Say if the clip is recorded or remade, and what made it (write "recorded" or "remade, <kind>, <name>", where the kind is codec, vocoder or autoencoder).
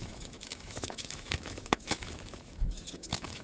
remade, autoencoder, DAC-VAE